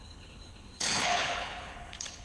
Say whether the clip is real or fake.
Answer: fake